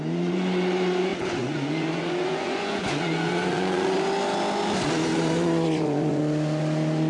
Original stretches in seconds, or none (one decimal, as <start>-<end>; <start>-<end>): 0.0-1.1; 4.0-5.1; 6.2-7.1